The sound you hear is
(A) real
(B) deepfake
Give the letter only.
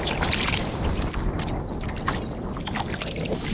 A